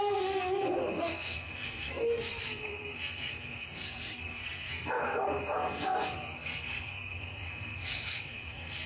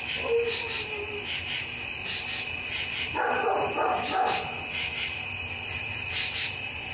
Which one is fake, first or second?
first